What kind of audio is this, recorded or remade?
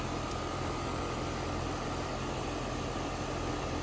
remade